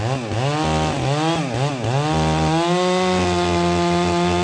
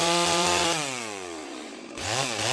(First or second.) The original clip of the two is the first